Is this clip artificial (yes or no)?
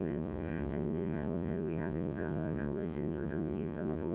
yes